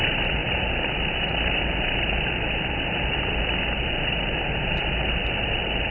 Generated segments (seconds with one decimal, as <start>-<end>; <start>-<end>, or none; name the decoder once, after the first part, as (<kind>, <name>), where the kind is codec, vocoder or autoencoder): none

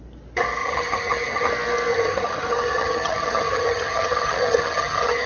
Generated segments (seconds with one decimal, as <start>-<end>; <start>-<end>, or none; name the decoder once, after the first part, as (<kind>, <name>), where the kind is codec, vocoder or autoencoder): 0.6-1.5 (vocoder, HiFi-GAN); 1.9-5.3